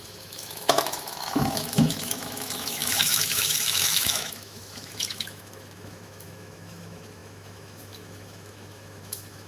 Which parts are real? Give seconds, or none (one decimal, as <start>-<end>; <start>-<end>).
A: none